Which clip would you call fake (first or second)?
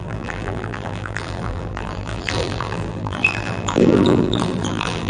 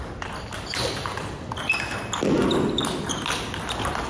first